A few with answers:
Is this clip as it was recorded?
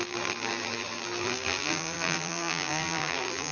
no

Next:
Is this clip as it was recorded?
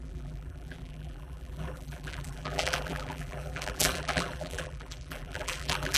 no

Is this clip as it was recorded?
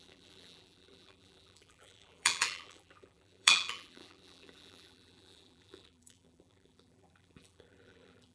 no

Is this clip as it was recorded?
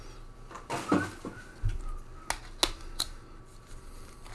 yes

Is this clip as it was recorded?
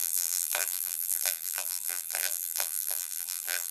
no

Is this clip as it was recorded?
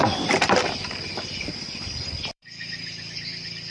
no